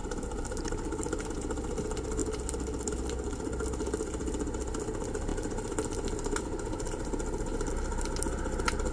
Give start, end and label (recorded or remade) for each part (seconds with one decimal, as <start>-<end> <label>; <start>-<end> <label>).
0.0-1.3 remade; 1.3-5.3 recorded; 5.3-7.7 remade; 7.7-8.9 recorded